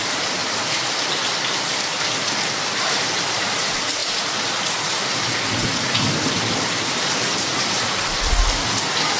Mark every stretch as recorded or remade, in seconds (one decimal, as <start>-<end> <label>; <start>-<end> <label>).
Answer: 0.0-4.0 remade; 4.0-6.1 recorded; 6.1-7.5 remade; 7.5-8.0 recorded; 8.0-9.2 remade